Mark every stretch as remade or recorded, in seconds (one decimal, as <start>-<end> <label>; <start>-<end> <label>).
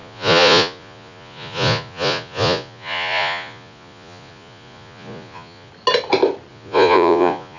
0.0-5.7 remade; 5.7-6.5 recorded; 6.5-7.6 remade